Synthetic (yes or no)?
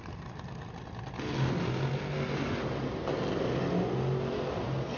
no